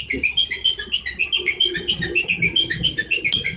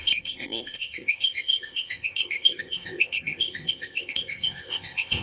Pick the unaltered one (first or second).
first